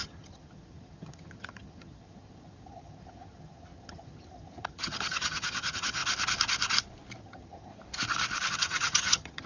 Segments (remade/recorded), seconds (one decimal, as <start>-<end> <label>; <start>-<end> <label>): 0.0-6.0 remade; 6.0-7.2 recorded; 7.2-7.7 remade; 7.7-8.5 recorded; 8.5-9.5 remade

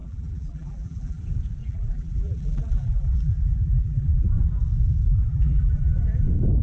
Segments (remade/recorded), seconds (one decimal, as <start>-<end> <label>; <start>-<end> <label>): 0.0-1.2 remade; 1.2-1.6 recorded; 1.6-4.3 remade; 4.3-5.1 recorded; 5.1-5.9 remade; 5.9-6.6 recorded

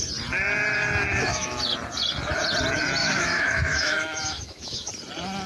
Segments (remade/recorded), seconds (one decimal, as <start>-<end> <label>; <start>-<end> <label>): 0.0-1.0 recorded; 1.0-1.6 remade; 1.6-3.0 recorded; 3.0-4.9 remade; 4.9-5.5 recorded

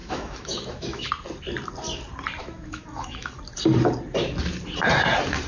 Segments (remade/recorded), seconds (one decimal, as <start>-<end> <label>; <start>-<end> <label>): 0.0-1.1 remade; 1.1-2.4 recorded; 2.4-3.3 remade; 3.3-5.5 recorded

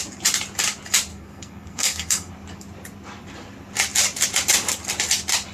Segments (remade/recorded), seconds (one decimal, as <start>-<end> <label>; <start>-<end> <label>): 0.0-1.1 recorded; 1.1-2.3 remade; 2.3-5.5 recorded

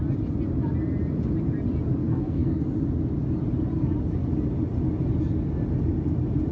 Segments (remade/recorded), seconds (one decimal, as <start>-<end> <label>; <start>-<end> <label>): 0.0-2.0 recorded; 2.0-2.6 remade; 2.6-6.5 recorded